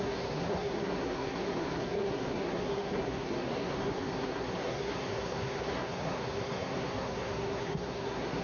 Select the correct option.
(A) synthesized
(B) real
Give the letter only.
A